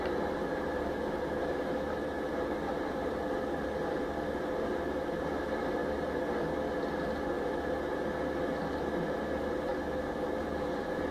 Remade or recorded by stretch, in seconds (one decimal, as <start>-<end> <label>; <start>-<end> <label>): 0.0-5.8 remade; 5.8-8.8 recorded; 8.8-9.7 remade; 9.7-10.4 recorded; 10.4-11.1 remade